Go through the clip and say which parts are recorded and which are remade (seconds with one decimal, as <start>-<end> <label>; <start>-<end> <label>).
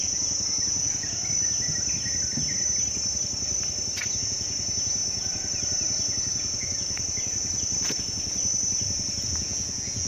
0.0-1.2 remade; 1.2-4.2 recorded; 4.2-10.1 remade